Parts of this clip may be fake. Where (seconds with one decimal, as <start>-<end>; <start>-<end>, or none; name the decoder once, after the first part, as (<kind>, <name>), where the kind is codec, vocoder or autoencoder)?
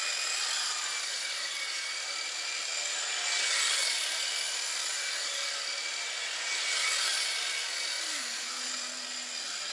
8.1-8.6 (codec, SNAC)